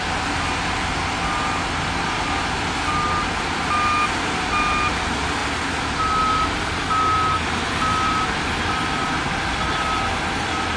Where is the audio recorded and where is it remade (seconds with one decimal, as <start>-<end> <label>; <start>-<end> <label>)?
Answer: 0.0-10.8 recorded